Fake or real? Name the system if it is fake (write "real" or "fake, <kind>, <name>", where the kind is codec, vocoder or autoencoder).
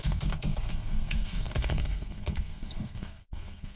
fake, codec, SNAC